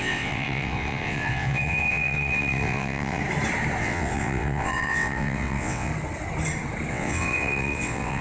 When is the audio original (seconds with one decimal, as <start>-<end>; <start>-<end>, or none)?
3.2-3.8; 5.9-6.9